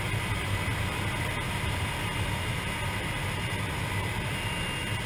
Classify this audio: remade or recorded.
recorded